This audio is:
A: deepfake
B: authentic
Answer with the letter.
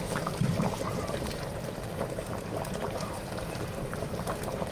A